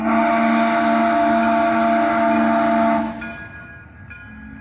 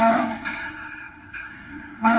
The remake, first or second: second